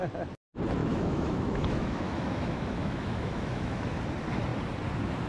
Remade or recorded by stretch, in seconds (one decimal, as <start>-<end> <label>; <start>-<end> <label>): 0.0-0.8 recorded; 0.8-4.0 remade; 4.0-5.3 recorded